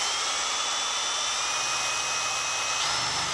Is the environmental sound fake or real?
real